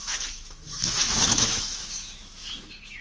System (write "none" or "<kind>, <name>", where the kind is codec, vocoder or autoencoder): autoencoder, DAC-VAE